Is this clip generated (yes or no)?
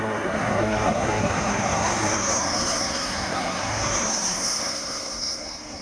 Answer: yes